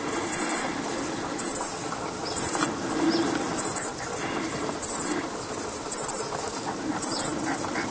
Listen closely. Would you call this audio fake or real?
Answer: real